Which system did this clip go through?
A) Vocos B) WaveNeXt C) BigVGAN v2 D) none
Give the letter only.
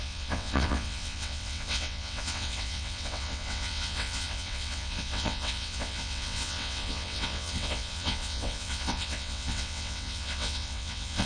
B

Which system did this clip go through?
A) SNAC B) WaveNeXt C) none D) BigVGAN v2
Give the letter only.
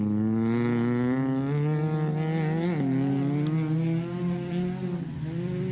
C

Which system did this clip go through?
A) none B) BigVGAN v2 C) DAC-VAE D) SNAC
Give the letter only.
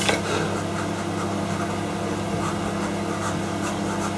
A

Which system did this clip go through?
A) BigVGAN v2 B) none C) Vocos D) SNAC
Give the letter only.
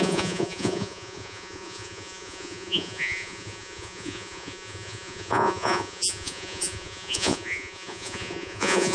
C